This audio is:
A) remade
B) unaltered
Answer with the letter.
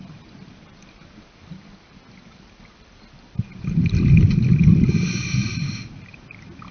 B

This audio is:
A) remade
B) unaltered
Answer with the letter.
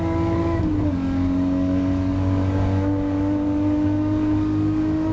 A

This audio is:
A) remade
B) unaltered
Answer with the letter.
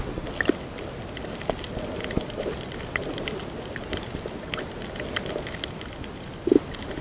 B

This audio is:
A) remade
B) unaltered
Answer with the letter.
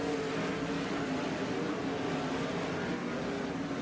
B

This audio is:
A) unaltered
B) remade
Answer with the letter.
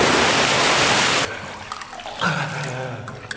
A